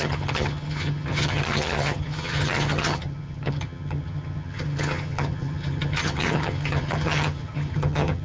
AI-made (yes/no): yes